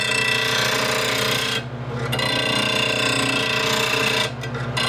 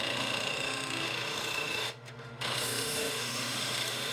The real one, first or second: first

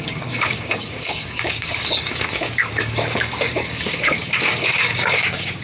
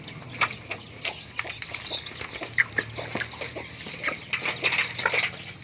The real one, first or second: second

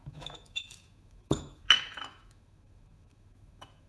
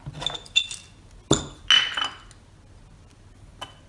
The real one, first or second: second